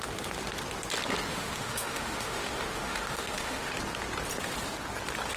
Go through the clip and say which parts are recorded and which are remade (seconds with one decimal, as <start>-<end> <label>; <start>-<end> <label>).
0.0-1.3 recorded; 1.3-3.7 remade; 3.7-5.4 recorded